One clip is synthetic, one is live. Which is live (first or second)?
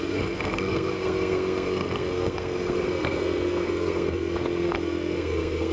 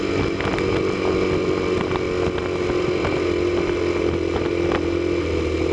second